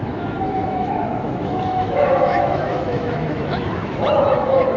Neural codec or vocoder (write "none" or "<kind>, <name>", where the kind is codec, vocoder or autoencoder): autoencoder, DAC-VAE